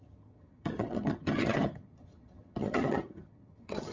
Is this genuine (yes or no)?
no